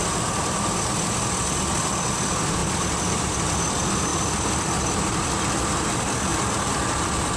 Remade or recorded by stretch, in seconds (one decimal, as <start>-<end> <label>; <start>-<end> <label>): 0.0-2.6 recorded; 2.6-3.2 remade; 3.2-4.1 recorded; 4.1-5.3 remade; 5.3-6.3 recorded; 6.3-6.9 remade; 6.9-7.4 recorded